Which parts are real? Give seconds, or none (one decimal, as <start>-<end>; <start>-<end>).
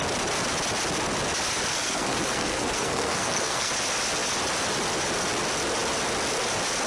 0.0-1.7; 3.7-6.9